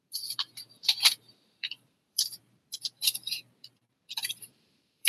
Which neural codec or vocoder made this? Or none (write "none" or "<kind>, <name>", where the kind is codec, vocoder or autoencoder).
vocoder, BigVGAN v2